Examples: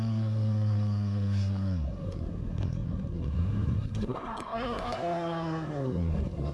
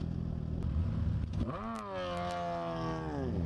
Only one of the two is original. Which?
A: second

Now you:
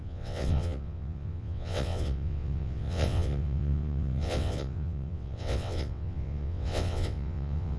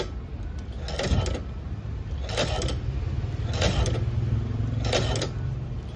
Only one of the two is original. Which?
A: second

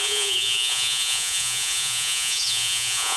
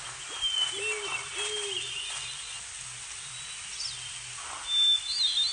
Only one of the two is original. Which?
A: second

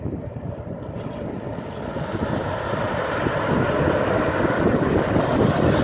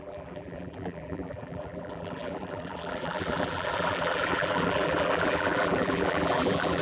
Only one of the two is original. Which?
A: first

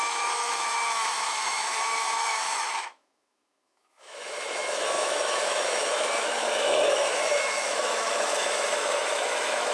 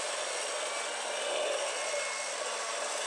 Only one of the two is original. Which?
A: second